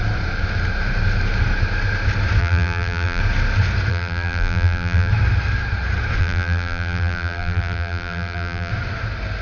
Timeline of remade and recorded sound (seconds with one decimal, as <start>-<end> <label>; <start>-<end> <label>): 0.0-2.4 recorded; 2.4-3.2 remade; 3.2-3.9 recorded; 3.9-5.1 remade; 5.1-6.2 recorded; 6.2-8.7 remade; 8.7-9.4 recorded